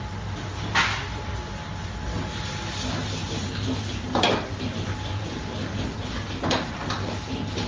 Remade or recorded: recorded